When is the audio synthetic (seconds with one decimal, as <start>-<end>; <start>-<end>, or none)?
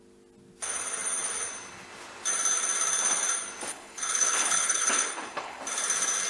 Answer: 3.7-5.6